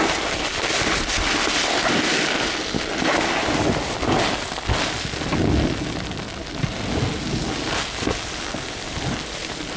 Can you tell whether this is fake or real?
real